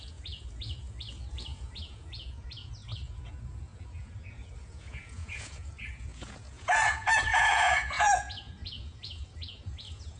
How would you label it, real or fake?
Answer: fake